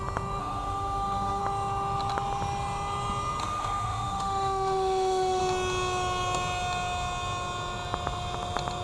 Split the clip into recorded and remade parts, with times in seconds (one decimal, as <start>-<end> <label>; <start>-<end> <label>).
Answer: 0.0-0.4 recorded; 0.4-1.4 remade; 1.4-3.4 recorded; 3.4-5.4 remade; 5.4-8.8 recorded